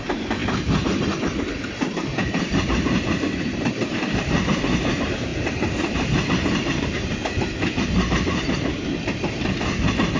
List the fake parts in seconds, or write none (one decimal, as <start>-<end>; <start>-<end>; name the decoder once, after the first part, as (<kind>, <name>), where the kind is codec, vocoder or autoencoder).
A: 0.0-10.2 (vocoder, BigVGAN v2)